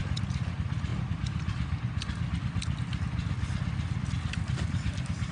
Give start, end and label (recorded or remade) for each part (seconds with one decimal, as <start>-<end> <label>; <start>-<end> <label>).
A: 0.0-5.3 recorded